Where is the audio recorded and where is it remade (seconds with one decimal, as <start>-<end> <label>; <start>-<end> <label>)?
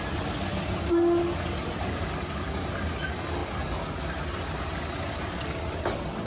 0.0-6.3 recorded